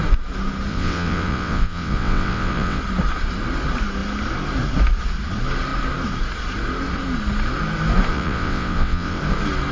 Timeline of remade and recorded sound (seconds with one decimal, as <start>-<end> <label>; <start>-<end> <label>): 0.0-0.7 recorded; 0.7-2.8 remade; 2.8-8.1 recorded; 8.1-9.2 remade; 9.2-9.7 recorded